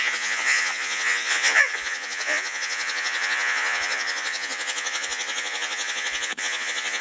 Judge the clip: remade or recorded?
remade